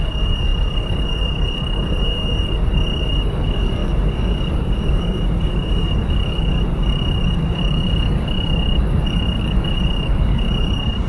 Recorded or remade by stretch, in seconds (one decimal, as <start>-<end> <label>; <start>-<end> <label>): 0.0-11.1 remade